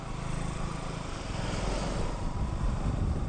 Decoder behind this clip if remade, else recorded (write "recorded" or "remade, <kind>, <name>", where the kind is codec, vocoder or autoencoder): recorded